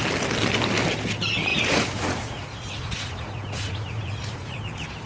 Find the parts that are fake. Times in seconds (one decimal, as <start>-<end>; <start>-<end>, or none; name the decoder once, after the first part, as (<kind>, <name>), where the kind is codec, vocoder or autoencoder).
1.5-4.6 (vocoder, Vocos)